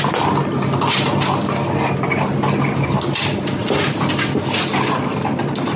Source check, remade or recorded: recorded